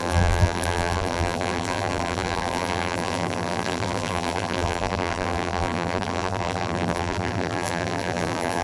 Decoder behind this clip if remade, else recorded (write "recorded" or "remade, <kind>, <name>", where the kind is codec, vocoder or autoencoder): remade, vocoder, BigVGAN v2